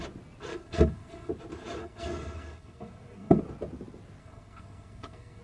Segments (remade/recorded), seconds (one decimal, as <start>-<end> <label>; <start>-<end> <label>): 0.0-0.5 recorded; 0.5-1.3 remade; 1.3-1.8 recorded; 1.8-3.4 remade; 3.4-4.2 recorded; 4.2-5.4 remade